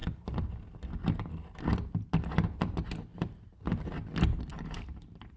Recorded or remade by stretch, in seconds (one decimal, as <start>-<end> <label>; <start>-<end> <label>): 0.0-3.1 recorded; 3.1-3.8 remade; 3.8-4.5 recorded; 4.5-5.4 remade